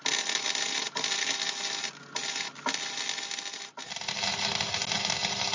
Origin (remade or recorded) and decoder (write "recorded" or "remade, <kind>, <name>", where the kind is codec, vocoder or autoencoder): recorded